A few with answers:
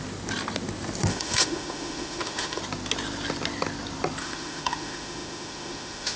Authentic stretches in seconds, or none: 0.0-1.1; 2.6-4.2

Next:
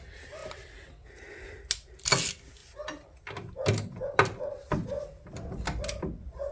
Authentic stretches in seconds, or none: 0.0-6.5

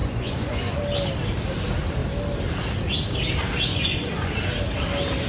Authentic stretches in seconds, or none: 0.8-3.7; 4.3-5.3

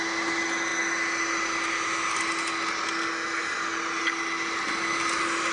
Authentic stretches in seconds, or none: 0.0-5.5

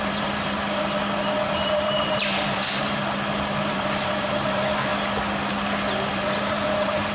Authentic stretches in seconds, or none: 0.6-1.6; 3.0-3.7; 4.9-6.1

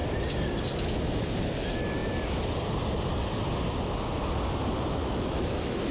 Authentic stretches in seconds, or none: 0.0-5.0

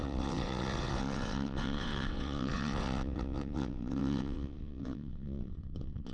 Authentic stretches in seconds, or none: none